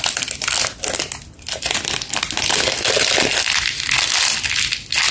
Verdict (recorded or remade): recorded